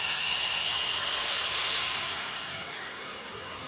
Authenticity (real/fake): fake